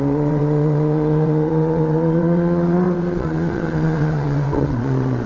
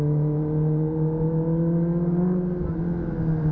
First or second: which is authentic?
second